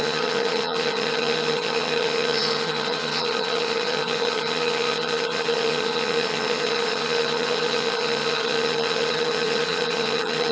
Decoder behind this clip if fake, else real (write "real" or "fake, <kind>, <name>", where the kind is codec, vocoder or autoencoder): fake, vocoder, HiFi-GAN